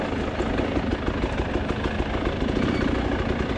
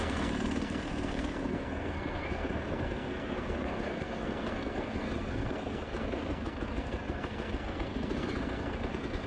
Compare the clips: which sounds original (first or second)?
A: first